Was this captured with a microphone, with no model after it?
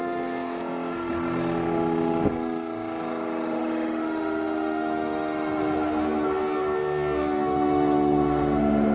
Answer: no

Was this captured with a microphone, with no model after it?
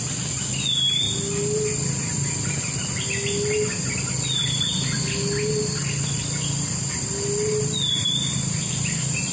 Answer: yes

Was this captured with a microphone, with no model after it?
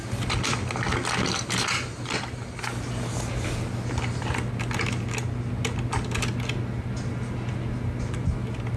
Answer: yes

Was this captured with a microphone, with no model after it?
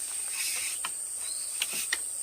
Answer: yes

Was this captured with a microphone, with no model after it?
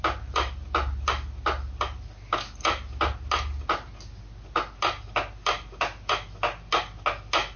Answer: yes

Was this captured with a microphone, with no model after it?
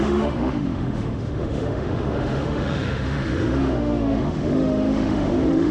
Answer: no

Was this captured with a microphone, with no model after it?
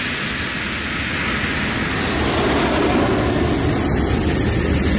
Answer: yes